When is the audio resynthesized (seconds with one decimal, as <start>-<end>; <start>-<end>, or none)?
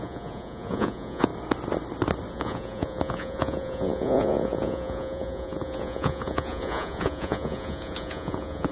0.0-1.3; 2.3-8.7